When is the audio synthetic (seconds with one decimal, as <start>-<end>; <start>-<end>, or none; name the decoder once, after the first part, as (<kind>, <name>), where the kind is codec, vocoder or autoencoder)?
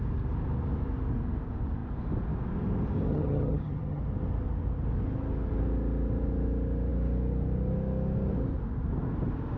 3.1-4.0 (vocoder, HiFi-GAN)